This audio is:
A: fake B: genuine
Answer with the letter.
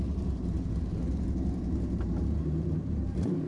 A